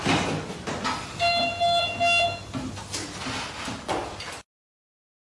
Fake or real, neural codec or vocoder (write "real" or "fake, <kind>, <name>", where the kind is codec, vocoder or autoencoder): real